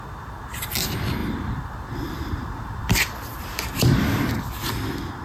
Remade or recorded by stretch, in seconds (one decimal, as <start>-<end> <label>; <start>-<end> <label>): 0.0-1.2 recorded; 1.2-4.3 remade; 4.3-5.2 recorded